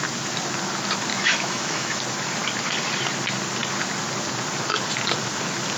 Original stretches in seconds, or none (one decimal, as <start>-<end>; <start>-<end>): 0.0-1.1; 2.0-5.8